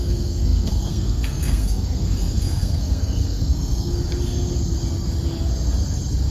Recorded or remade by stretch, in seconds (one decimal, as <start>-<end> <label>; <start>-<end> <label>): 0.0-4.0 remade; 4.0-6.3 recorded